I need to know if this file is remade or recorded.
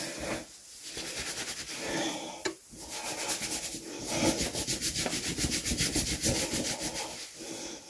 recorded